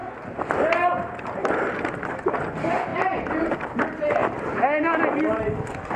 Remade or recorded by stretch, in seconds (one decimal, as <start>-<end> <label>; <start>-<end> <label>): 0.0-6.0 recorded